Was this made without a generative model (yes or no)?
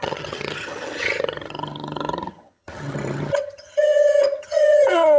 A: no